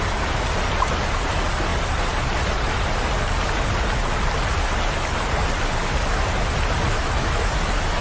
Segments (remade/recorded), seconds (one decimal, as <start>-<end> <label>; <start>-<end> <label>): 0.0-6.9 recorded; 6.9-7.5 remade; 7.5-8.0 recorded